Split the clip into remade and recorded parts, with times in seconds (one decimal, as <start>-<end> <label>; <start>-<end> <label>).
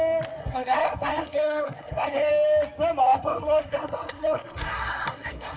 0.0-0.4 recorded; 0.4-2.3 remade; 2.3-3.0 recorded; 3.0-5.6 remade